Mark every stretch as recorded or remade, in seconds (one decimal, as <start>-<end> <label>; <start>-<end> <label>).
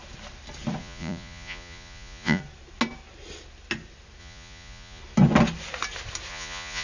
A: 0.0-0.8 recorded; 0.8-2.4 remade; 2.4-4.2 recorded; 4.2-5.0 remade; 5.0-6.3 recorded; 6.3-6.8 remade